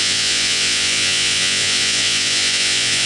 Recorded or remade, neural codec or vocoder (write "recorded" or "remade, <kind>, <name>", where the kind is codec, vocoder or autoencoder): remade, vocoder, Vocos